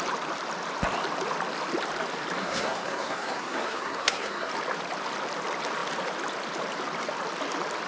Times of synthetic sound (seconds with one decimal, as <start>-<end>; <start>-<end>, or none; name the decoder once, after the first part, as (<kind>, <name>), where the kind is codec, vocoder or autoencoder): 2.4-4.5 (codec, SNAC)